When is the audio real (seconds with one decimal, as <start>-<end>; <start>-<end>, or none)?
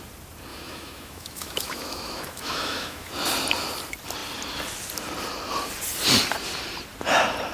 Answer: 0.0-0.5; 3.1-7.5